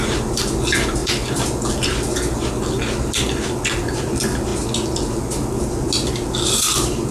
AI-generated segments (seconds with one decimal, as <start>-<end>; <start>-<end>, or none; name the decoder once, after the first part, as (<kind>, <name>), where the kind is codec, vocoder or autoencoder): none